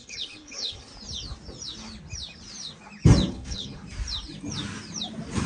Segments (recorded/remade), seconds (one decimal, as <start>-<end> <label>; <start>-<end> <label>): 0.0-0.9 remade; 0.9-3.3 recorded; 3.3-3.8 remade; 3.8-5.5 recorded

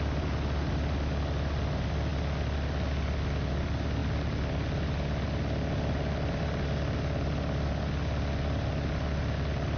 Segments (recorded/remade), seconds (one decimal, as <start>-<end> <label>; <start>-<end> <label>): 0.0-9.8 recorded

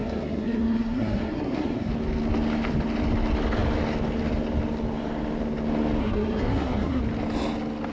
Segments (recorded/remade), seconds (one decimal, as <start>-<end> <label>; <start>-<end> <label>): 0.0-1.9 remade; 1.9-6.0 recorded; 6.0-7.0 remade; 7.0-7.9 recorded

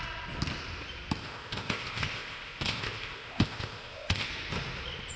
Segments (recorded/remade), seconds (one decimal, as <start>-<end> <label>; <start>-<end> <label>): 0.0-1.2 recorded; 1.2-4.3 remade; 4.3-5.2 recorded